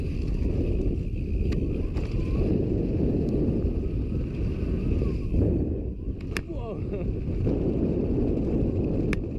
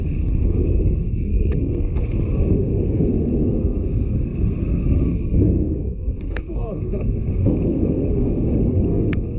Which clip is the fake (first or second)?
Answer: second